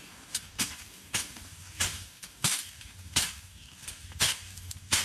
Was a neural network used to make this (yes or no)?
yes